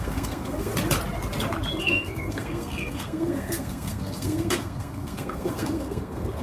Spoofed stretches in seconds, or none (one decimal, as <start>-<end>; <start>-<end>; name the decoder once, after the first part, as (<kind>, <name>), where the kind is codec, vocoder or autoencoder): 0.0-0.7 (codec, SNAC); 1.8-6.4